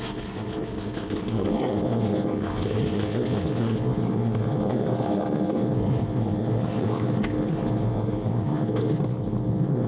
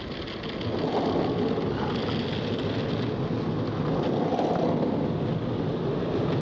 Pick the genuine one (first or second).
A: second